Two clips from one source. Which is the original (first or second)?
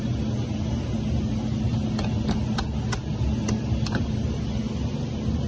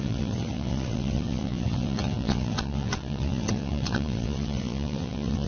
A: first